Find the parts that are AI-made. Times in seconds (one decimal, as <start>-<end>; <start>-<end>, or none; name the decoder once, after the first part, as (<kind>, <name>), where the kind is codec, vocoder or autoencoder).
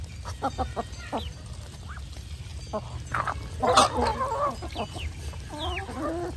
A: none